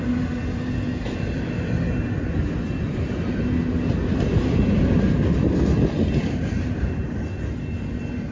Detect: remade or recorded recorded